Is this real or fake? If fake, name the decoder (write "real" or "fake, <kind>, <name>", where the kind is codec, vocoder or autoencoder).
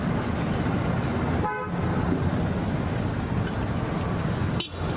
real